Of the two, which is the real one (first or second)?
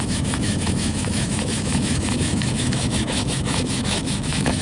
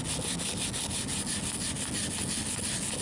second